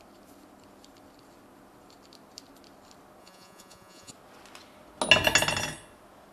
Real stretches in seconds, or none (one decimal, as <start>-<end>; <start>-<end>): 0.0-3.2; 4.1-6.3